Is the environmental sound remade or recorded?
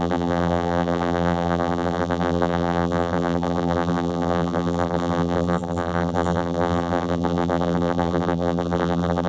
remade